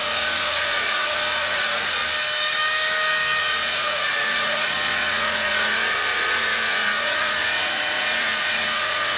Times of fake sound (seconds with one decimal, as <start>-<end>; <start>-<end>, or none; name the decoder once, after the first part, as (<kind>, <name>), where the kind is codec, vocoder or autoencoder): 0.0-2.0 (vocoder, Vocos); 3.4-9.2